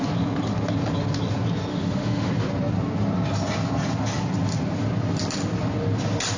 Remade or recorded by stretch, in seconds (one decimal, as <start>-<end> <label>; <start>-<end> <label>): 0.0-1.7 recorded; 1.7-2.3 remade; 2.3-6.4 recorded